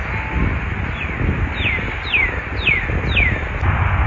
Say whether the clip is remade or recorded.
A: recorded